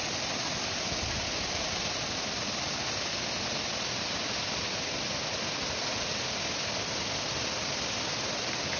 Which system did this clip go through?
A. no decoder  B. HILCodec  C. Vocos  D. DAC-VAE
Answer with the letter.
A